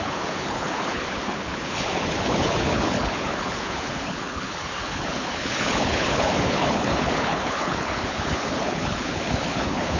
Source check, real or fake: fake